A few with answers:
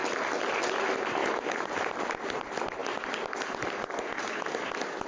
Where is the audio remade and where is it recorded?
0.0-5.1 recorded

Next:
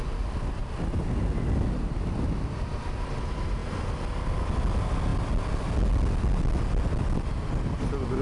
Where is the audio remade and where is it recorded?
0.0-8.2 recorded

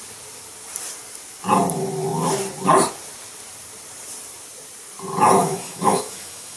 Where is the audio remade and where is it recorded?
0.0-5.4 recorded; 5.4-6.6 remade

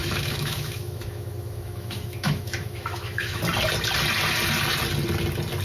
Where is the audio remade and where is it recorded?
0.0-3.4 remade; 3.4-5.6 recorded

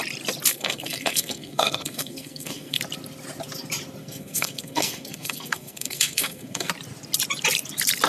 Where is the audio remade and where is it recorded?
0.0-0.5 recorded; 0.5-2.8 remade; 2.8-4.0 recorded; 4.0-6.7 remade; 6.7-8.1 recorded

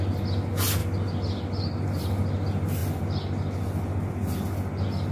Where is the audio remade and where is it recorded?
0.0-5.1 recorded

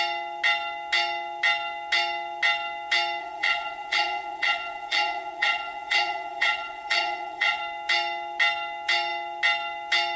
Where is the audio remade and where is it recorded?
0.0-3.2 recorded; 3.2-7.6 remade; 7.6-10.2 recorded

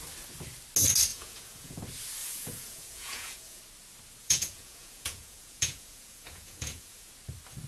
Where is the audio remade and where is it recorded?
0.0-1.1 recorded; 1.1-1.8 remade; 1.8-2.2 recorded; 2.2-3.6 remade; 3.6-4.2 recorded; 4.2-7.1 remade; 7.1-7.7 recorded